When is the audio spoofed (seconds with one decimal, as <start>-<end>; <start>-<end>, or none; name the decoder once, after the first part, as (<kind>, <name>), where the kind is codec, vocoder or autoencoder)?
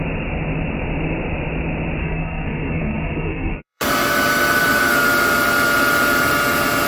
2.0-3.9 (codec, SNAC)